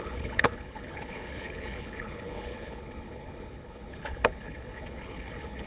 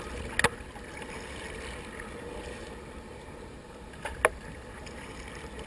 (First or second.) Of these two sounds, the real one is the second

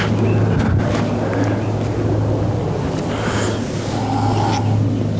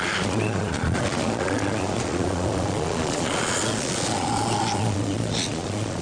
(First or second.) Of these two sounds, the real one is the first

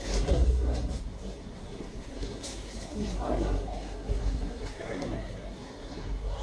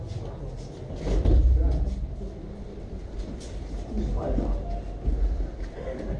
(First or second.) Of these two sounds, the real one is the second